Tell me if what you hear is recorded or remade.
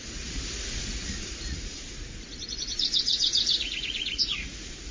remade